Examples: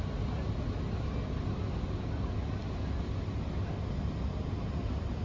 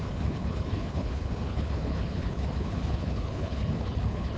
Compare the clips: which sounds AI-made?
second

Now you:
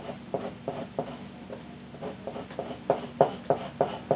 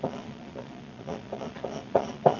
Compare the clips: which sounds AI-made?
second